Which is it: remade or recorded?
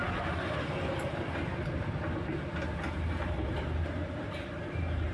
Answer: recorded